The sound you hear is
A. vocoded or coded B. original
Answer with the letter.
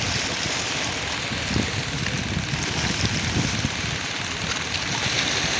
B